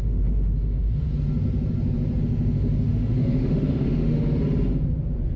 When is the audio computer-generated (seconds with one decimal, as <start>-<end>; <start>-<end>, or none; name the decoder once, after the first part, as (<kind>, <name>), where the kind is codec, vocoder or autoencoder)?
0.0-1.1 (autoencoder, DAC-VAE); 2.2-4.4